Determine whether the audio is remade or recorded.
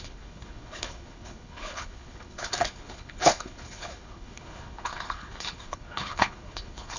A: remade